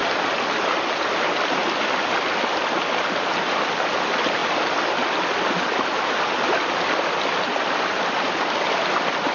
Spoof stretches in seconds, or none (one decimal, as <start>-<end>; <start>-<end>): none